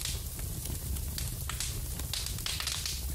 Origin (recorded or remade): recorded